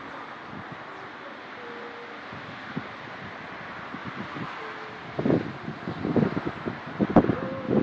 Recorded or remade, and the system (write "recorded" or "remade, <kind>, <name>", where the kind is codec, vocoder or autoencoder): recorded